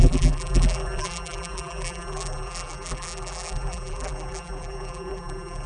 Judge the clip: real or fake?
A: fake